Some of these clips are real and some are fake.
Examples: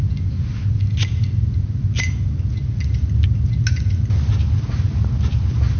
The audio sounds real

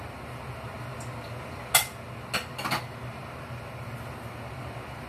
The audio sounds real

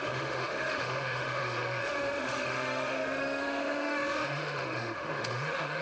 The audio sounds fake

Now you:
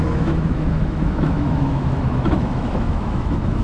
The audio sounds fake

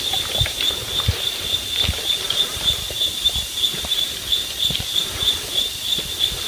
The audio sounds real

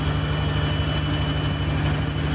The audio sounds real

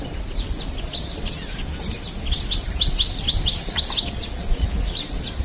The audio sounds real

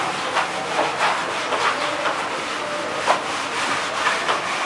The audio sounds real